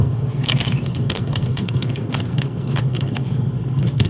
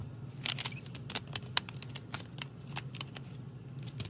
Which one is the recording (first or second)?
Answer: second